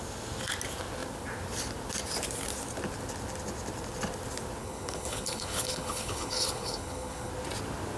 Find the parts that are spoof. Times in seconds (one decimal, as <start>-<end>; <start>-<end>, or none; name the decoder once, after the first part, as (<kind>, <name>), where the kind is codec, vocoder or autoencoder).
4.6-7.3 (codec, HILCodec)